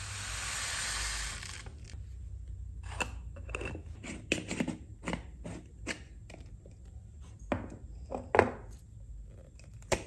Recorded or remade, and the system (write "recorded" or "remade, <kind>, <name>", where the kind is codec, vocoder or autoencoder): recorded